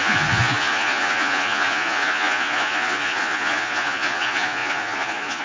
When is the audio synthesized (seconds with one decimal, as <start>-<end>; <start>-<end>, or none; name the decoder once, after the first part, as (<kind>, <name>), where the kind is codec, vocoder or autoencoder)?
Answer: 0.0-5.4 (vocoder, Vocos)